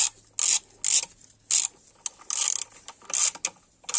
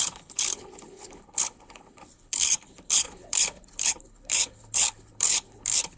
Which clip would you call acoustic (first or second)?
first